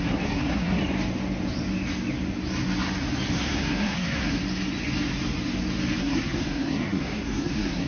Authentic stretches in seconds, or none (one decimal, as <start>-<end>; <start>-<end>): 0.8-3.3; 4.4-6.0